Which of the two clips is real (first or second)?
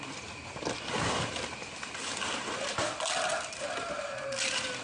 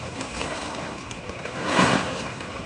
first